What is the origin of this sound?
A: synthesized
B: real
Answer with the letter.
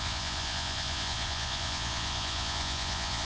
A